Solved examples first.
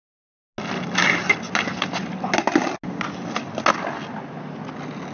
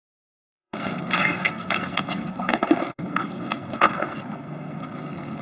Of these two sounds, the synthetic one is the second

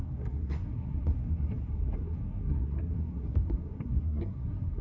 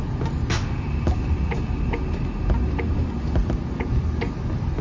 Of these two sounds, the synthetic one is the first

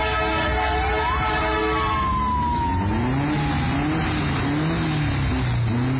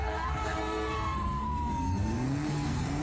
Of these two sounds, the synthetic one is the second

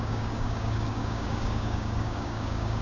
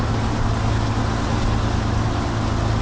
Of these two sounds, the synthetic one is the first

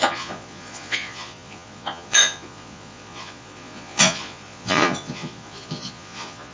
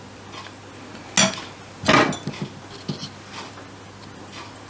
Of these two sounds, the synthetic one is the first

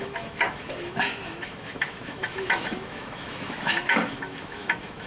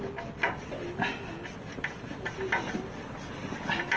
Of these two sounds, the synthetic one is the first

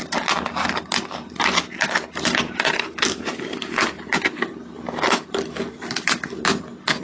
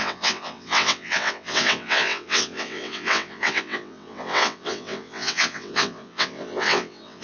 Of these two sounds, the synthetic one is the second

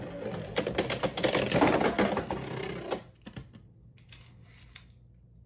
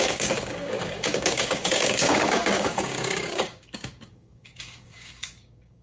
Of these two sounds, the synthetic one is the second